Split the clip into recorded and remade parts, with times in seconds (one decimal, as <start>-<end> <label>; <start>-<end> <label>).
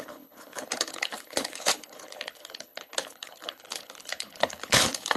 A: 0.0-5.2 remade